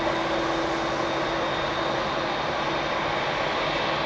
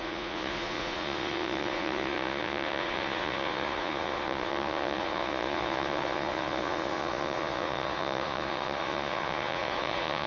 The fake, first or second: second